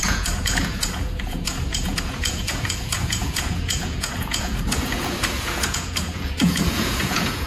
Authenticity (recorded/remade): remade